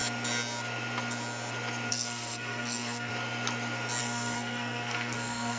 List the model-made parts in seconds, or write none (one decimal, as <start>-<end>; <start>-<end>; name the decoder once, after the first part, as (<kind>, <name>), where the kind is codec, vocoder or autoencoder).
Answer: 1.9-3.1 (codec, SNAC); 4.0-5.6